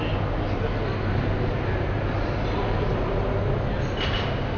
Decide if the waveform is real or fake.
real